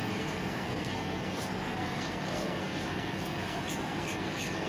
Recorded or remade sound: remade